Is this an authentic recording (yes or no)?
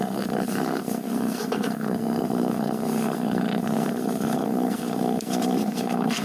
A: no